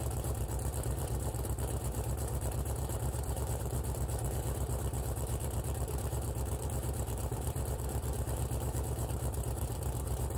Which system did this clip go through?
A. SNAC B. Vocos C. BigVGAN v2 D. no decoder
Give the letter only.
C